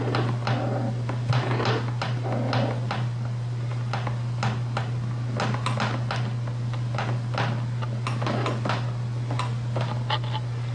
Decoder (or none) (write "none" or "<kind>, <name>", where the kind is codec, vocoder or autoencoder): none